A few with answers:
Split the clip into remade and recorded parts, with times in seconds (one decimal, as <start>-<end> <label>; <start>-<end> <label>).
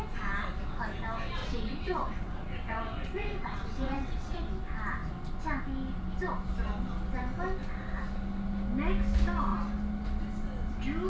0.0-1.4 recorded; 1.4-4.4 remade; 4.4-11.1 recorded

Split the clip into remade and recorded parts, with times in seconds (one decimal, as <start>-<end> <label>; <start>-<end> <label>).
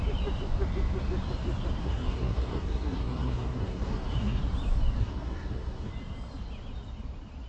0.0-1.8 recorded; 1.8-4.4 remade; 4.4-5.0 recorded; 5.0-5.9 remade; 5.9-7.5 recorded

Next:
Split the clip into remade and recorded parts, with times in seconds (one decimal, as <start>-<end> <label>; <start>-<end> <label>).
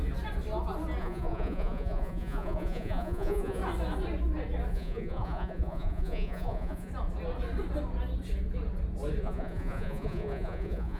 0.0-1.0 recorded; 1.0-3.6 remade; 3.6-4.7 recorded; 4.7-6.9 remade; 6.9-9.2 recorded; 9.2-11.0 remade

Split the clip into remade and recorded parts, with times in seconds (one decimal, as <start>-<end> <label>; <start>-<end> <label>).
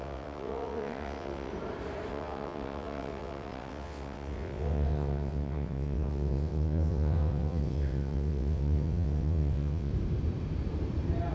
0.0-1.5 remade; 1.5-2.1 recorded; 2.1-9.9 remade; 9.9-11.3 recorded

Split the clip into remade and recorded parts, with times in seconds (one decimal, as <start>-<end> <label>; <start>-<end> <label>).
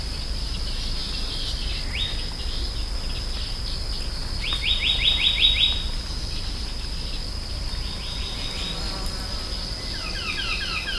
0.0-11.0 recorded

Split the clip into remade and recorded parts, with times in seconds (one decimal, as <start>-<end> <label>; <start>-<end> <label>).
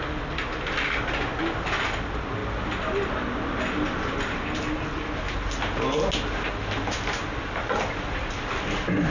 0.0-9.1 recorded